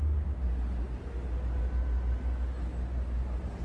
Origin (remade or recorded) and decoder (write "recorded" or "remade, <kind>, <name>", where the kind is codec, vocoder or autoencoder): recorded